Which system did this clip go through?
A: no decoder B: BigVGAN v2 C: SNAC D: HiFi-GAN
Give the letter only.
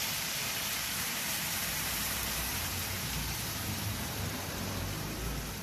B